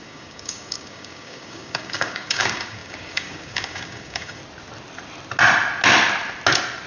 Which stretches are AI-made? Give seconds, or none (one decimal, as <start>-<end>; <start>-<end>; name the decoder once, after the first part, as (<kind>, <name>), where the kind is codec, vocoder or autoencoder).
0.0-4.4 (codec, DAC)